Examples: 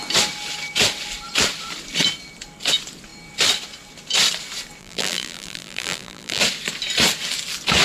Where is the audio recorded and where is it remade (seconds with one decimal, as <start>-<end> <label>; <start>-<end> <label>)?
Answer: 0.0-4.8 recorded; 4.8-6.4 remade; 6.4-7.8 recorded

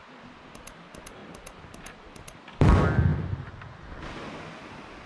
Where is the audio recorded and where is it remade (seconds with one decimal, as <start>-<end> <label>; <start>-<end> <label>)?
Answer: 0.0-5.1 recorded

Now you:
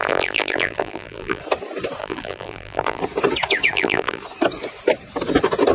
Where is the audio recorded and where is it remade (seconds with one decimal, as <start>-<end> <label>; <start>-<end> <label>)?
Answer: 0.0-1.4 remade; 1.4-2.0 recorded; 2.0-3.0 remade; 3.0-3.7 recorded; 3.7-4.2 remade; 4.2-5.7 recorded